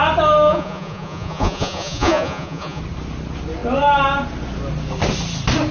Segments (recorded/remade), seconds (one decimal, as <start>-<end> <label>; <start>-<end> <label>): 0.0-0.5 recorded; 0.5-2.8 remade; 2.8-5.7 recorded